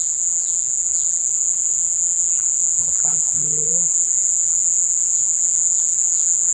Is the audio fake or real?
fake